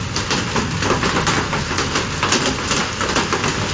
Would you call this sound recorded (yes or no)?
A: yes